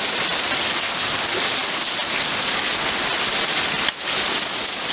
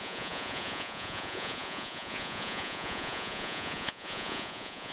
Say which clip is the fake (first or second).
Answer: second